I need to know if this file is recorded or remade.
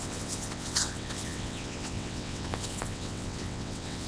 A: remade